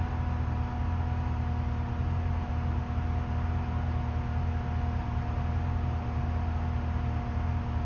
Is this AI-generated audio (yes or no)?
no